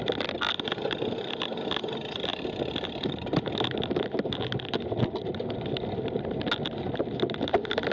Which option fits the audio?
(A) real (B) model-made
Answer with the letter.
A